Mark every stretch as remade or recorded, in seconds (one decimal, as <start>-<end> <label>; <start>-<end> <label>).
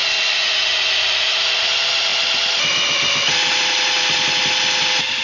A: 0.0-5.2 recorded